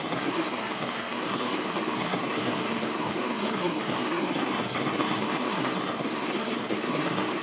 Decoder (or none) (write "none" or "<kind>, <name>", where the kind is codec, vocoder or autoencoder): codec, SNAC